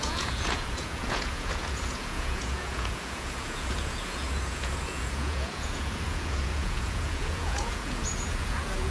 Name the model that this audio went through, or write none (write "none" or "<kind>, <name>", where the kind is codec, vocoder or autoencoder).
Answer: vocoder, Vocos